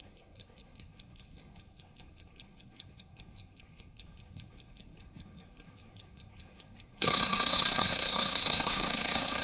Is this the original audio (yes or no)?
no